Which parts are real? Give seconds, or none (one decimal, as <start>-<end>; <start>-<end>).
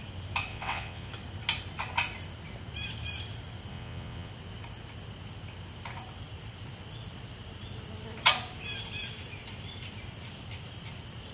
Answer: 0.0-0.5; 1.1-3.7; 4.3-11.3